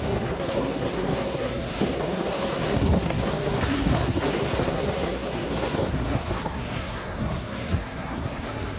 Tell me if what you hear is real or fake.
fake